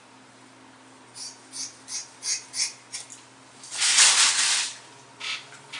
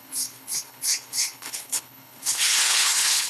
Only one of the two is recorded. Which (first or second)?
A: first